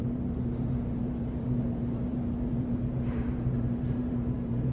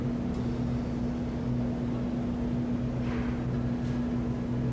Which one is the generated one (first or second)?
first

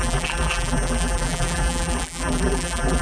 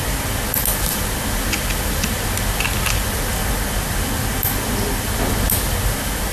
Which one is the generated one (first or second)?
first